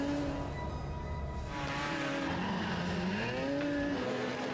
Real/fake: real